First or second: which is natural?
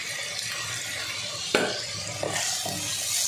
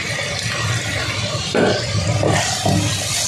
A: first